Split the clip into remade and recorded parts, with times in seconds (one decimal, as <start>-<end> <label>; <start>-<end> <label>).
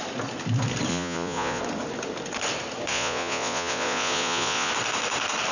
0.0-0.9 recorded; 0.9-1.6 remade; 1.6-2.9 recorded; 2.9-4.7 remade; 4.7-5.5 recorded